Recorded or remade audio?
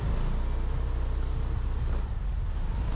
recorded